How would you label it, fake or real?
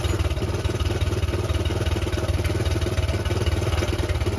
real